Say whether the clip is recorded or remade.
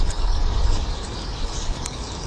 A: remade